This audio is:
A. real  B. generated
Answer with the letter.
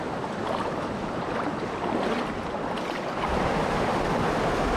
A